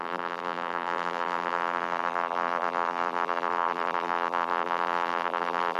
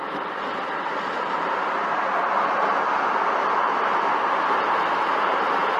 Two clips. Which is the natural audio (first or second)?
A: second